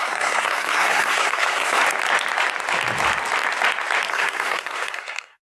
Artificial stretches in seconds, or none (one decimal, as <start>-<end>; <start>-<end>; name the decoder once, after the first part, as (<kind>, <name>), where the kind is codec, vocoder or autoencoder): 0.0-1.8 (codec, SNAC); 4.1-5.4

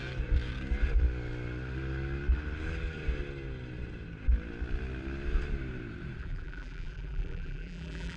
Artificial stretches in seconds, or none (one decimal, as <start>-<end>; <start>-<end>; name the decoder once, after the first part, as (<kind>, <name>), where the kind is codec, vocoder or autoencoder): 6.2-8.2 (vocoder, BigVGAN v2)

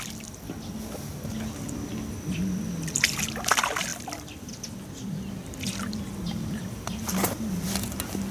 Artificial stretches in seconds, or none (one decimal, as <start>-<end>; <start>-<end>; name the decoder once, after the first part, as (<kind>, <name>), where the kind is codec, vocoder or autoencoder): 3.9-4.5 (vocoder, BigVGAN v2)

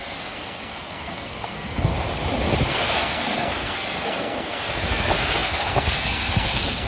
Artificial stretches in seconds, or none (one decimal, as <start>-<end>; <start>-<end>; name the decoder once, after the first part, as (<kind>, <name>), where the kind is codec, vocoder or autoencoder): 0.0-1.9 (codec, SNAC); 2.7-6.9

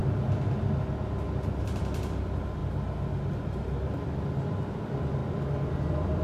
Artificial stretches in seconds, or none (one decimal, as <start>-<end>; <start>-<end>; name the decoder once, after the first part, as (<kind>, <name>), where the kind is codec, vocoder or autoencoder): 1.6-2.6 (vocoder, BigVGAN v2); 3.3-5.2; 5.7-6.2

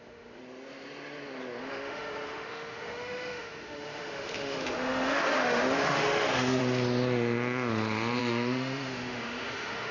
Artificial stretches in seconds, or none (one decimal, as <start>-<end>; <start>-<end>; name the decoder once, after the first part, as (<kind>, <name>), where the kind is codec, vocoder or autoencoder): 0.0-0.4 (autoencoder, DAC-VAE); 1.6-6.6; 8.2-9.9

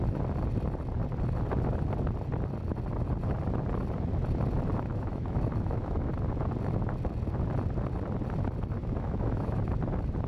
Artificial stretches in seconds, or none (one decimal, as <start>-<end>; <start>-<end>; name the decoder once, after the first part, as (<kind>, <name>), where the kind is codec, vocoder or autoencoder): 4.9-6.1 (autoencoder, DAC-VAE); 8.8-9.6

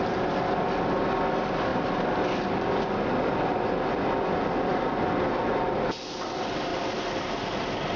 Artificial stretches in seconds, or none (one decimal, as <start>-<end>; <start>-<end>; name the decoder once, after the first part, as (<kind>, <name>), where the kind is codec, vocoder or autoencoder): none